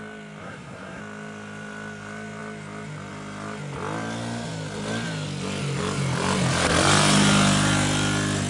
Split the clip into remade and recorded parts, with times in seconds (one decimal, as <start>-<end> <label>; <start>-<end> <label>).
0.0-0.4 recorded; 0.4-1.0 remade; 1.0-8.5 recorded